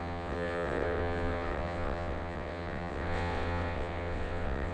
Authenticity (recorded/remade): remade